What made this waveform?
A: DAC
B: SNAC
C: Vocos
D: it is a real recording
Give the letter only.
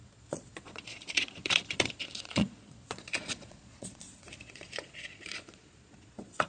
C